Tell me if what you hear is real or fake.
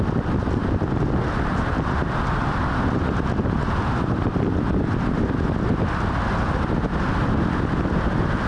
real